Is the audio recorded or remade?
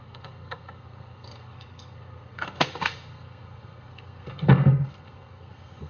remade